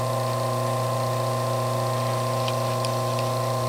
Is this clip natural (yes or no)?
yes